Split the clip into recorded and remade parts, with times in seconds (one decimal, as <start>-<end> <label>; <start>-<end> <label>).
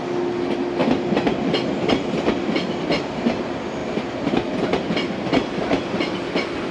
0.0-6.7 recorded